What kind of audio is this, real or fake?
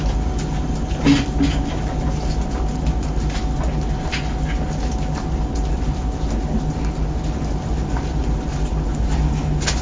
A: real